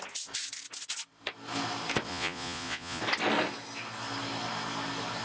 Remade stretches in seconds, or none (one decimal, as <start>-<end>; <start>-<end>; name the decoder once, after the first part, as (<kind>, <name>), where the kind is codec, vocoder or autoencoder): 2.1-3.0 (vocoder, Vocos)